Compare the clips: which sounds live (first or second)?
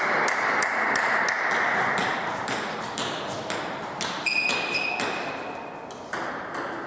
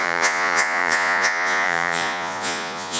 first